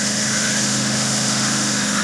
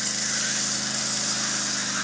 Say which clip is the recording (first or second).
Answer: second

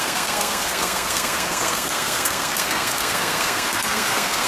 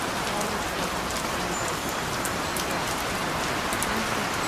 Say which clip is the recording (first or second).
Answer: second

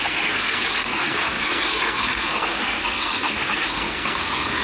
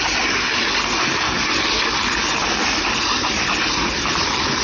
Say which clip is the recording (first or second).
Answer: second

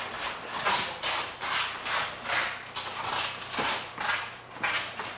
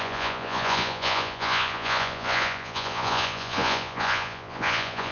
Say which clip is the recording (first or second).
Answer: first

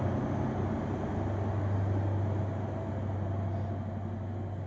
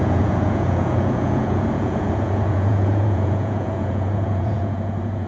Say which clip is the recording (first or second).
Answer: first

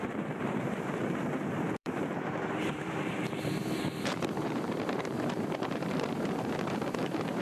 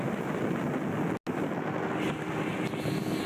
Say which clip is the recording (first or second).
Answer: second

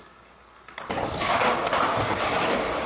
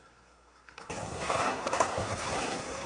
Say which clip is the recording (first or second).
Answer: first